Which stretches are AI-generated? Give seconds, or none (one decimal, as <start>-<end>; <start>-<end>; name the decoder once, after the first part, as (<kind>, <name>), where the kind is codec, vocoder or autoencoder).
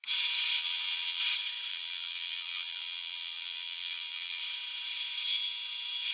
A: 0.6-1.2 (vocoder, BigVGAN v2); 1.7-4.4